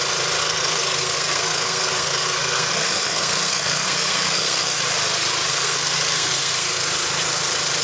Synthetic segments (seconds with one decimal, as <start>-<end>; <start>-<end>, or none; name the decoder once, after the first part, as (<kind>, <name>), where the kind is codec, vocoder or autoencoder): 0.4-4.8 (codec, SNAC); 5.5-6.8